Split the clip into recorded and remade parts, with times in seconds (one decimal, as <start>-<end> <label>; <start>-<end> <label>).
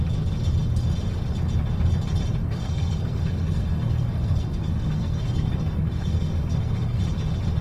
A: 0.0-2.4 recorded; 2.4-7.0 remade; 7.0-7.6 recorded